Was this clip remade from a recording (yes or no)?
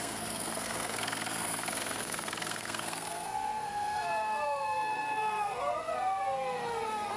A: yes